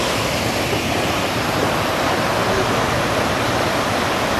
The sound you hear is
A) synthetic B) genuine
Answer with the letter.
B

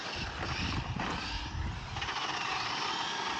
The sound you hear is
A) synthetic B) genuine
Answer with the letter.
B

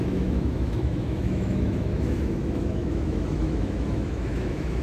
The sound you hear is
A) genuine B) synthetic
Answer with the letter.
B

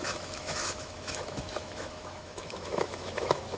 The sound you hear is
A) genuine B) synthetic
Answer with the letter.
B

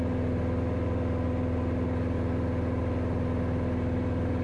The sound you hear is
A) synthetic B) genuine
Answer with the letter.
B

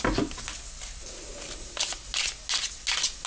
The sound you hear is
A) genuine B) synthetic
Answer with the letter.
A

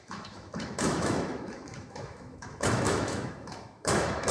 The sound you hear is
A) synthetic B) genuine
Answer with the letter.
A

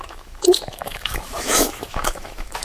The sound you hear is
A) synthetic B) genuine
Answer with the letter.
A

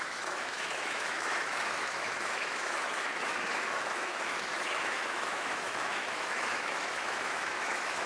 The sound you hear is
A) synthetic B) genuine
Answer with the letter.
A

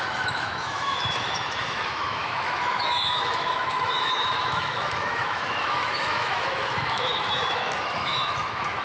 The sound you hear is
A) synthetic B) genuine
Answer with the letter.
A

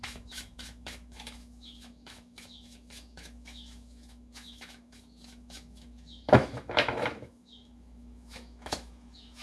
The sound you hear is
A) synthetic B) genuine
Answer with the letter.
A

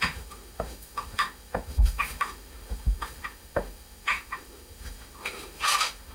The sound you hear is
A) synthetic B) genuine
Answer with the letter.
A